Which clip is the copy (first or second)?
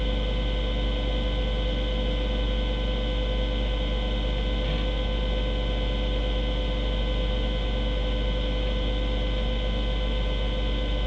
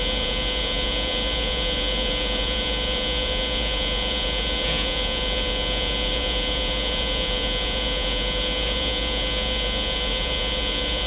second